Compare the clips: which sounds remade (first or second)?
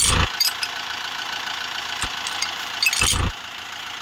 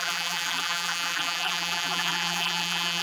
second